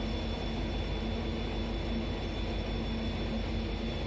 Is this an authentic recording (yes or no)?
yes